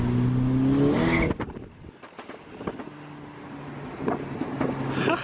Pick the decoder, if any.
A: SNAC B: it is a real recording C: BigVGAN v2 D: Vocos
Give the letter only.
B